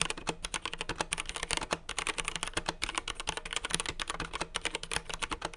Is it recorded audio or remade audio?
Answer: recorded